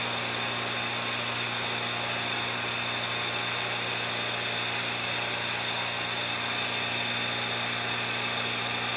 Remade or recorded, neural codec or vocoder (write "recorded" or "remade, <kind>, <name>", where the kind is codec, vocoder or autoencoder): recorded